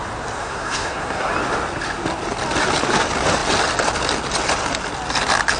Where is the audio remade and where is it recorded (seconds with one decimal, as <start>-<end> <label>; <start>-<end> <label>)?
0.0-0.4 recorded; 0.4-1.3 remade; 1.3-5.6 recorded